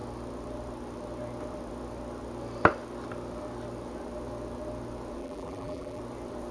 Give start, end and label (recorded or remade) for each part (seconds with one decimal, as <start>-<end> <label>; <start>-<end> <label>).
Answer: 0.0-5.2 recorded; 5.2-6.0 remade; 6.0-6.5 recorded